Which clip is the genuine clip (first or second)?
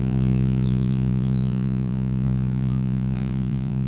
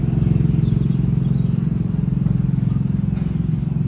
second